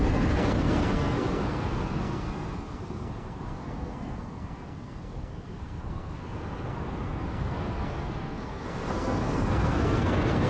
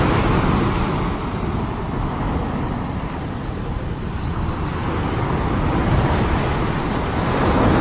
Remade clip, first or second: first